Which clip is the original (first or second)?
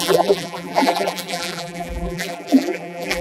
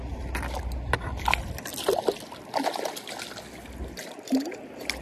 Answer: second